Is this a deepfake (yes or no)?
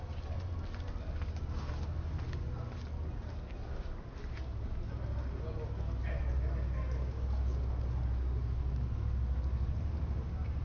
no